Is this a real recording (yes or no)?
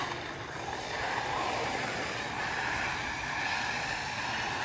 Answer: yes